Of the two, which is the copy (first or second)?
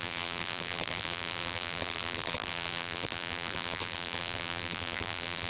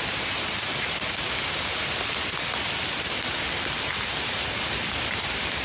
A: first